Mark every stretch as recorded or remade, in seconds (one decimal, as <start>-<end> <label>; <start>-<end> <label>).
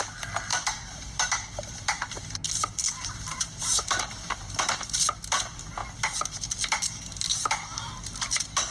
0.0-0.5 recorded; 0.5-5.2 remade; 5.2-8.7 recorded